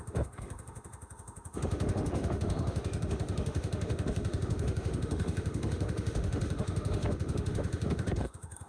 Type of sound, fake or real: fake